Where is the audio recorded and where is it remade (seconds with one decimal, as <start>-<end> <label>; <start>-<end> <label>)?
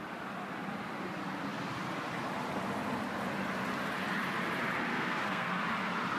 0.0-4.9 recorded; 4.9-5.6 remade; 5.6-6.2 recorded